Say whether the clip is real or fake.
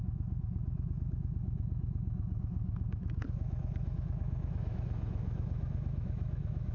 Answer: fake